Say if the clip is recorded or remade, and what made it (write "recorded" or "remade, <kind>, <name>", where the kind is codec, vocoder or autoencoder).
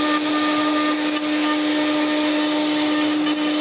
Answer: recorded